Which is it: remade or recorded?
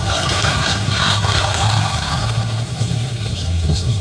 remade